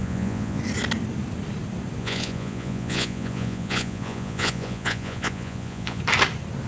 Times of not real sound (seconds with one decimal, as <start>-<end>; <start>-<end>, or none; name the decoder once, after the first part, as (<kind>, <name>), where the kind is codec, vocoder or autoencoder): 0.0-0.6 (vocoder, Vocos); 2.0-6.0